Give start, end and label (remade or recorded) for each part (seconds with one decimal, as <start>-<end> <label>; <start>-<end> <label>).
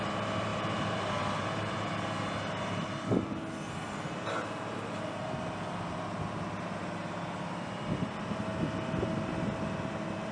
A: 0.0-10.3 recorded